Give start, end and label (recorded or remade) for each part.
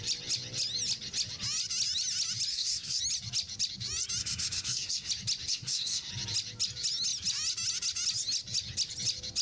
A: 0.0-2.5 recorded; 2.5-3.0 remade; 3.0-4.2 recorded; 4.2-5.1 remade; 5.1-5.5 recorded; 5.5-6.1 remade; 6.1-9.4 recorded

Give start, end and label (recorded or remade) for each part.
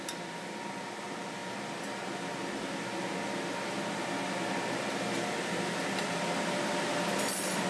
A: 0.0-7.7 recorded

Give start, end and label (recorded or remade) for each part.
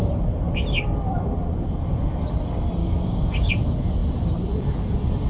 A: 0.0-2.8 recorded; 2.8-3.5 remade; 3.5-5.3 recorded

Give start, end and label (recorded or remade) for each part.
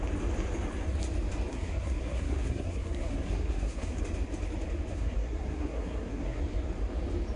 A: 0.0-1.5 recorded; 1.5-4.0 remade; 4.0-4.9 recorded; 4.9-6.4 remade; 6.4-7.4 recorded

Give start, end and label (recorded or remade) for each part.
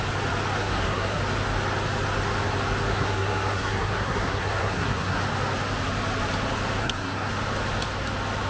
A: 0.0-0.6 recorded; 0.6-1.2 remade; 1.2-2.9 recorded; 2.9-5.2 remade; 5.2-6.8 recorded; 6.8-7.3 remade; 7.3-8.5 recorded